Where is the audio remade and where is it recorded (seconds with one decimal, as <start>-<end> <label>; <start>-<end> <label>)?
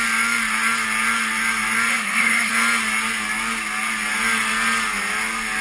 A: 0.0-1.9 recorded; 1.9-2.5 remade; 2.5-5.6 recorded